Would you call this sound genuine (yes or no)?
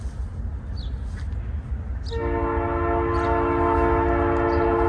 yes